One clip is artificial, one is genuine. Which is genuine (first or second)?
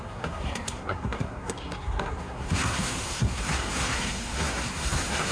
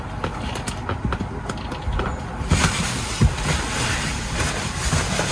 second